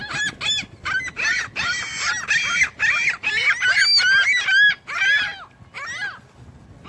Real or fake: real